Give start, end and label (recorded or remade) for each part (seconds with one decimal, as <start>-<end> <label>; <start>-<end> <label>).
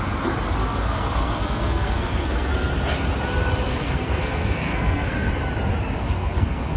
0.0-0.6 recorded; 0.6-2.5 remade; 2.5-3.7 recorded; 3.7-5.3 remade; 5.3-6.0 recorded; 6.0-6.8 remade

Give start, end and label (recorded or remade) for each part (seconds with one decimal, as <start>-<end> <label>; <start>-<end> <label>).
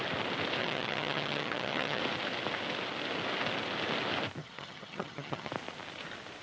0.0-0.6 recorded; 0.6-2.0 remade; 2.0-4.4 recorded; 4.4-5.5 remade; 5.5-6.4 recorded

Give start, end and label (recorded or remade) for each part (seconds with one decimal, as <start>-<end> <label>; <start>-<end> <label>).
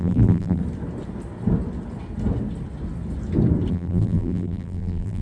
0.0-0.6 remade; 0.6-3.7 recorded; 3.7-5.2 remade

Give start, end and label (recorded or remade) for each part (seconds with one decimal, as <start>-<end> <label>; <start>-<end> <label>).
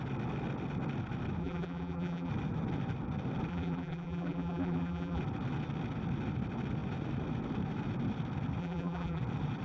0.0-1.4 recorded; 1.4-2.3 remade; 2.3-3.5 recorded; 3.5-5.2 remade; 5.2-8.6 recorded; 8.6-9.2 remade; 9.2-9.6 recorded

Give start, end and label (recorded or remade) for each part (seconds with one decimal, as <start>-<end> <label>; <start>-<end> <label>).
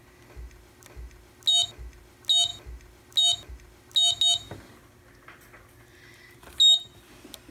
0.0-7.5 recorded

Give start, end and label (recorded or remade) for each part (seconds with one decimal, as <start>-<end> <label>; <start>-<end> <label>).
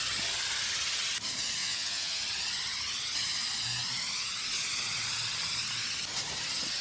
0.0-1.6 recorded; 1.6-2.2 remade; 2.2-6.8 recorded